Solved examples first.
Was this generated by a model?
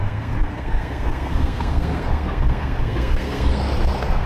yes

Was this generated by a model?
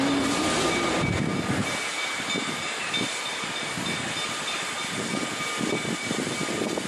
no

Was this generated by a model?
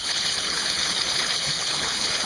yes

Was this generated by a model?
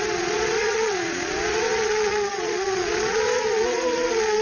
yes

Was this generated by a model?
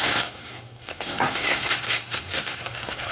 yes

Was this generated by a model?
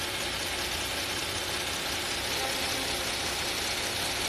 no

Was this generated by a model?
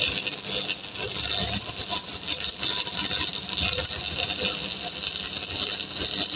no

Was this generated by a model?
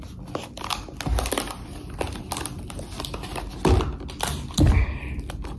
no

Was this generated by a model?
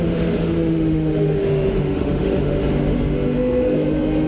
yes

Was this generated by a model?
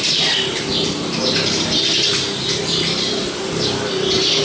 no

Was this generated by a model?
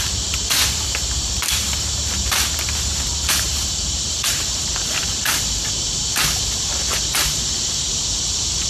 yes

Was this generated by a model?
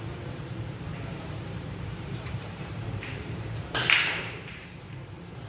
yes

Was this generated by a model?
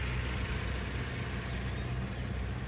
no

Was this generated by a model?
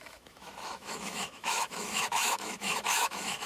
yes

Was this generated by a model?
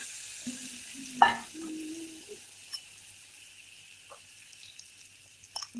no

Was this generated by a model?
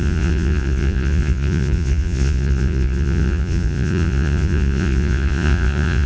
yes